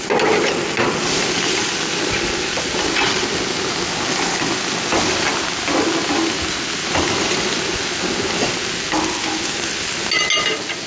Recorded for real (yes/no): yes